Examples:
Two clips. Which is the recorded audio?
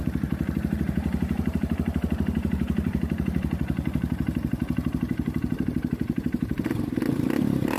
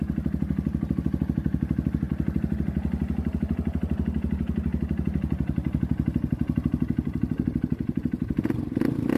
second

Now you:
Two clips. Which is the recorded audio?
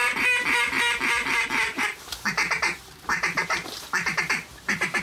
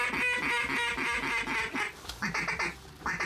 second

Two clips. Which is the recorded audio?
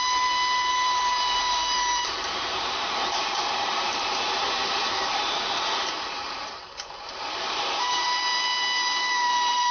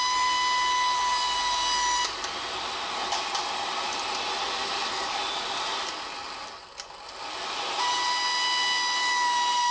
second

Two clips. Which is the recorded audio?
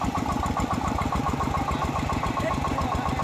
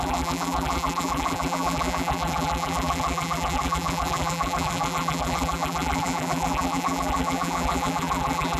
first